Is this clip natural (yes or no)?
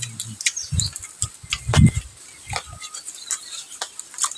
yes